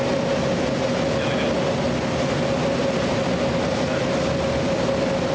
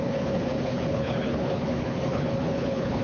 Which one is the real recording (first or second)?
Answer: first